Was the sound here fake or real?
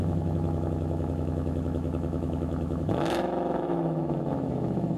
fake